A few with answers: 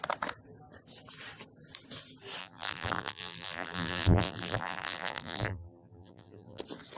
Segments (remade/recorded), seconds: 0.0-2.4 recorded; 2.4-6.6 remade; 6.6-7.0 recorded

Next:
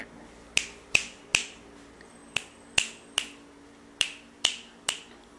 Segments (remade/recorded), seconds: 0.0-5.4 recorded

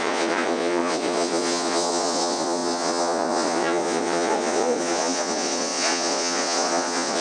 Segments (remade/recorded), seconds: 0.0-7.2 remade

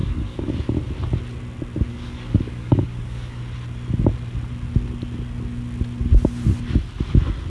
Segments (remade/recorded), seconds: 0.0-0.5 remade; 0.5-1.9 recorded; 1.9-3.4 remade; 3.4-7.5 recorded